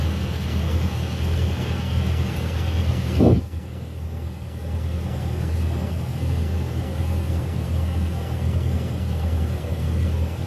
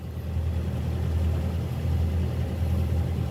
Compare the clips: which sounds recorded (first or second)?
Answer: second